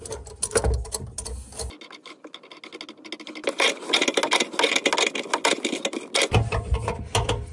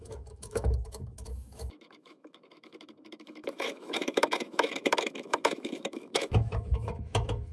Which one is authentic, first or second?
first